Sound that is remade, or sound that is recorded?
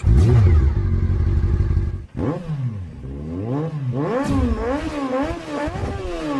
recorded